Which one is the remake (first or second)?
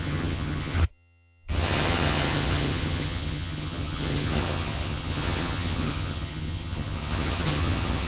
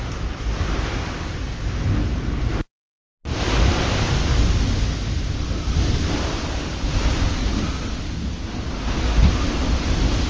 first